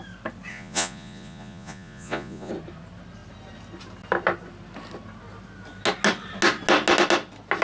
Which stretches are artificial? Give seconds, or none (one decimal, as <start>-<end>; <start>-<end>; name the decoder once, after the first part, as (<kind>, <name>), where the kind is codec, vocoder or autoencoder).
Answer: 0.5-2.5 (vocoder, Vocos)